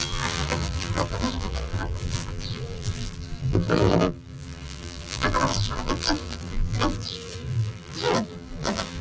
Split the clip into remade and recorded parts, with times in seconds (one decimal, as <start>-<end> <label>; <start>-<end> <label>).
0.0-9.0 remade